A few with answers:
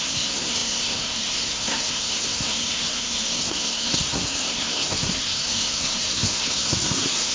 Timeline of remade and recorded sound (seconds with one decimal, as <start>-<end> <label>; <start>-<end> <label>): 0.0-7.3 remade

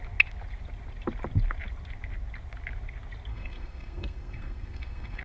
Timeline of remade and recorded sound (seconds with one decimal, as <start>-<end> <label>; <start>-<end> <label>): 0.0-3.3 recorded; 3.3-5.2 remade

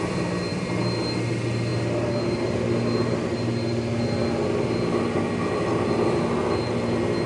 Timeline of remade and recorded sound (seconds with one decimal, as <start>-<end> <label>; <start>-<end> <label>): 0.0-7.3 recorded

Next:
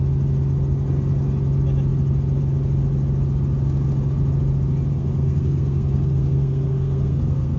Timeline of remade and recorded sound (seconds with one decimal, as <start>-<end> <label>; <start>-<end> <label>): 0.0-4.9 recorded; 4.9-7.6 remade

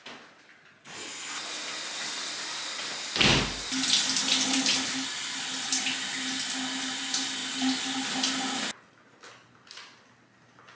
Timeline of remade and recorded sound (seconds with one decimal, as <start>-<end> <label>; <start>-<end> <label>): 0.0-10.7 recorded

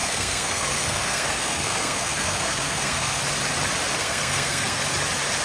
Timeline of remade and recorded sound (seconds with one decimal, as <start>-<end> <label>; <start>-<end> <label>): 0.0-3.2 remade; 3.2-4.0 recorded; 4.0-4.8 remade; 4.8-5.4 recorded